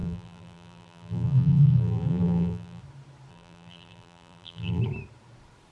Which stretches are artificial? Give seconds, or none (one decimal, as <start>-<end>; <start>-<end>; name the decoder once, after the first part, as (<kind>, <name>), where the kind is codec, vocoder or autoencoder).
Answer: 0.0-2.8 (vocoder, BigVGAN v2); 3.3-4.8

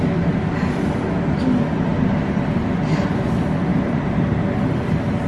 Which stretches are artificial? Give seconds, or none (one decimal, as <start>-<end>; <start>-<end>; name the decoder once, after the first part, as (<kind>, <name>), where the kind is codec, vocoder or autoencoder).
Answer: 1.9-3.1 (vocoder, BigVGAN v2); 3.7-4.2